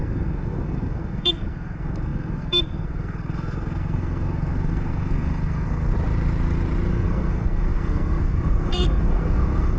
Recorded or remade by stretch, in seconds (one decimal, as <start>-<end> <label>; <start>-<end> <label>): 0.0-5.9 remade; 5.9-6.9 recorded; 6.9-9.8 remade